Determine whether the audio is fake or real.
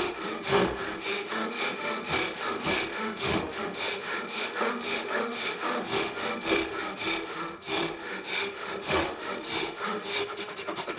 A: fake